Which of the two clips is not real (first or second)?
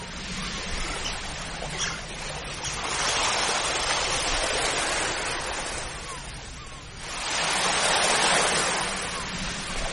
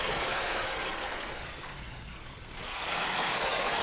second